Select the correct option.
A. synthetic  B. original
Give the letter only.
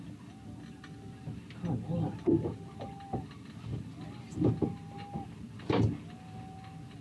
B